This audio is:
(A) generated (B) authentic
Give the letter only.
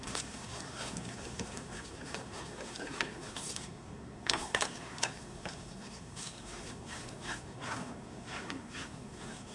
A